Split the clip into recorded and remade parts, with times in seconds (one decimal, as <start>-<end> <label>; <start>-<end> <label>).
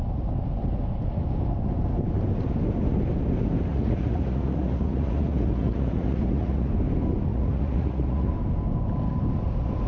0.0-3.7 recorded; 3.7-6.7 remade; 6.7-7.3 recorded; 7.3-8.3 remade; 8.3-9.9 recorded